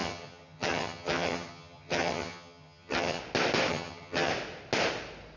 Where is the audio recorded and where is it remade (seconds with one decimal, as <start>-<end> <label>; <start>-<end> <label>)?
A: 0.0-3.2 remade; 3.2-3.7 recorded; 3.7-4.3 remade; 4.3-5.4 recorded